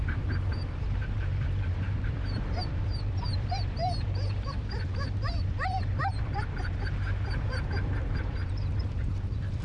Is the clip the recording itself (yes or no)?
no